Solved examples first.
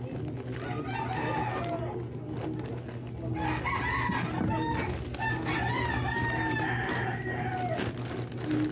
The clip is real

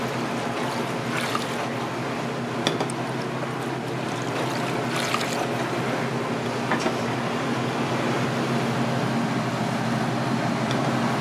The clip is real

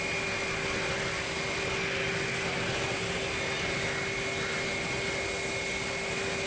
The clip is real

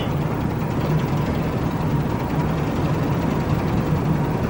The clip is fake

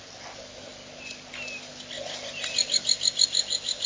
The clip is real